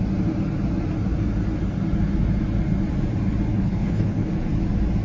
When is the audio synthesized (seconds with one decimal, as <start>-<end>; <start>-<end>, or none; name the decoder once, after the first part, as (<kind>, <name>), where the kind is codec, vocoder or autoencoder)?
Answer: 3.5-4.3 (codec, HILCodec)